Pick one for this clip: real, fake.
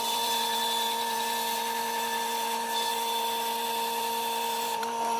fake